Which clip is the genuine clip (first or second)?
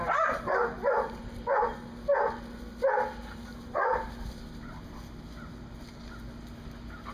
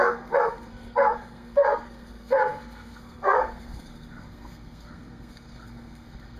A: first